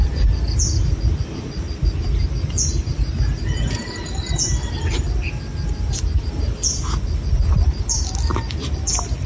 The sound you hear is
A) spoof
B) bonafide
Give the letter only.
B